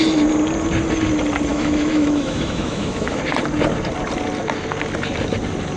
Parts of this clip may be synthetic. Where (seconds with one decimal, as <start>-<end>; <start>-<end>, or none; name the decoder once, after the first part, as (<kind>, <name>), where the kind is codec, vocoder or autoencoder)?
1.5-3.2 (autoencoder, DAC-VAE)